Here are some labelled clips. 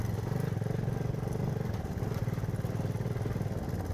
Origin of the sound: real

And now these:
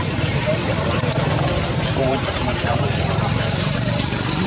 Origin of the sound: fake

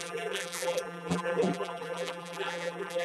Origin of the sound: fake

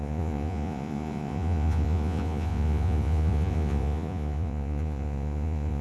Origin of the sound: fake